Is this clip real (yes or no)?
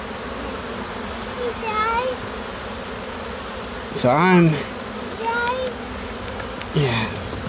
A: yes